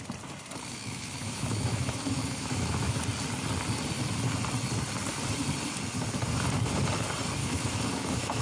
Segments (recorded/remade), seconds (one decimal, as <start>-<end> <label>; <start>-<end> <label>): 0.0-0.7 recorded; 0.7-3.0 remade; 3.0-7.4 recorded; 7.4-8.4 remade